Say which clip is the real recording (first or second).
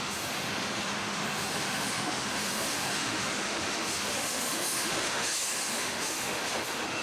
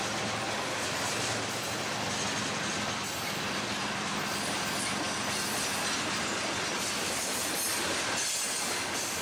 second